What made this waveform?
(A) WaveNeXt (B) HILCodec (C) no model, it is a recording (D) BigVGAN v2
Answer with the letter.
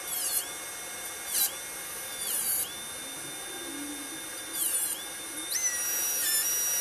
C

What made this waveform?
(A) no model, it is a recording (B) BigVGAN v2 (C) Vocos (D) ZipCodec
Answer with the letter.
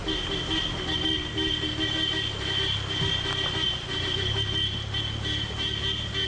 A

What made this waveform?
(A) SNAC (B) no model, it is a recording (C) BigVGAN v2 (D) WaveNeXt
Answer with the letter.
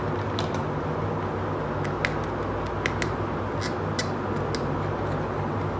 B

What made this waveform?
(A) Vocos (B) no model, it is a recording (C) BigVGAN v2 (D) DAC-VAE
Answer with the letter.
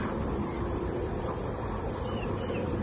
C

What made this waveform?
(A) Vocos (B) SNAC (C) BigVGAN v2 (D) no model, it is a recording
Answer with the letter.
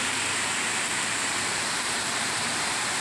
C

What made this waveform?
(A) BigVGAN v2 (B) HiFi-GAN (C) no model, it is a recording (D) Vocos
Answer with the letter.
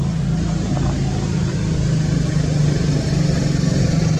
C